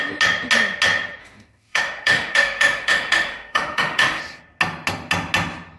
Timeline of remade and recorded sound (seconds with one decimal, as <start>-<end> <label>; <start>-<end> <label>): 0.0-1.2 recorded; 1.2-4.2 remade; 4.2-5.8 recorded